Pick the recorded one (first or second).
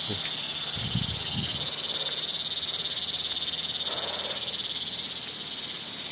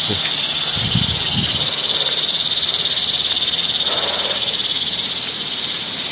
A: first